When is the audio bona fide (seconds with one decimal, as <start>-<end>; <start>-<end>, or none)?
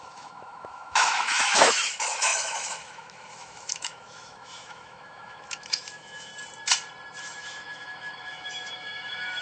6.3-7.2